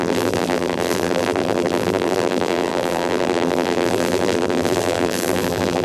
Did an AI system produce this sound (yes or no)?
yes